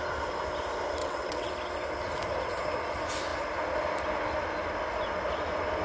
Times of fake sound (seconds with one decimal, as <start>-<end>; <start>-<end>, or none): 1.0-1.5